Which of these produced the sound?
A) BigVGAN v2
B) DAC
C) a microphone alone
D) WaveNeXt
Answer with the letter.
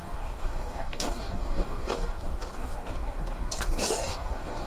B